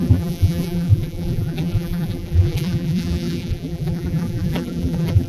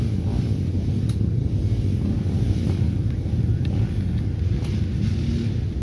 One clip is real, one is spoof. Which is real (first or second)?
second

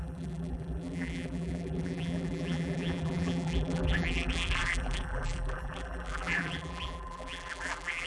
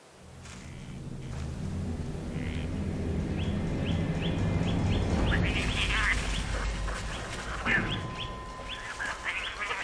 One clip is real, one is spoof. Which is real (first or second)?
second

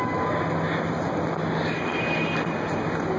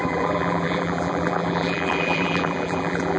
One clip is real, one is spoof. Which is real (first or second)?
first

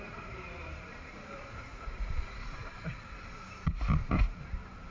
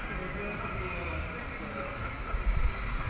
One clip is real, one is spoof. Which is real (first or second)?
second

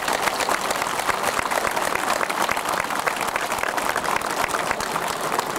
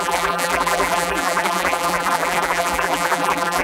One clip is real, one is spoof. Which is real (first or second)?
first